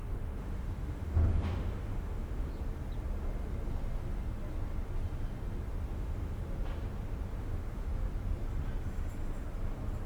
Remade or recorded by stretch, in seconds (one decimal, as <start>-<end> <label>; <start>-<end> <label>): 0.0-2.5 remade; 2.5-5.9 recorded; 5.9-6.4 remade; 6.4-7.4 recorded; 7.4-7.9 remade; 7.9-10.1 recorded